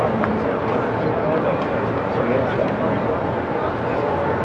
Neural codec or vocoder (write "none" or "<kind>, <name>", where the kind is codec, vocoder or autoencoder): none